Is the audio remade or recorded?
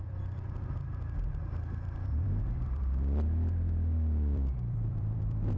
remade